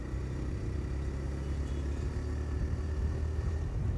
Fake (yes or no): no